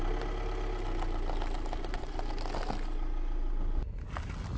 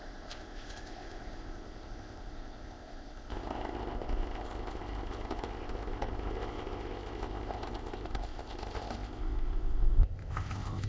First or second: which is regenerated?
second